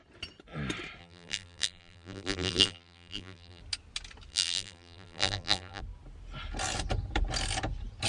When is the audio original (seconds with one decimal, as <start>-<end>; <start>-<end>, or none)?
0.0-1.0; 3.6-4.3; 5.8-8.1